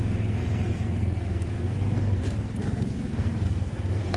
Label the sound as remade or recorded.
remade